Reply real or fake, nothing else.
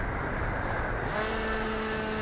real